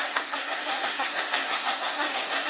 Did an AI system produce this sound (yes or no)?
yes